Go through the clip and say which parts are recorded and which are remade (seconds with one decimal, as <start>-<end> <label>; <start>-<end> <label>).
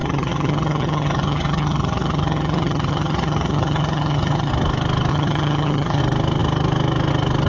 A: 0.0-4.5 remade; 4.5-5.1 recorded; 5.1-6.0 remade; 6.0-7.5 recorded